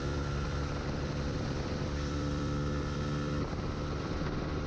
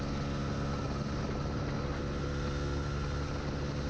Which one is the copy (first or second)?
first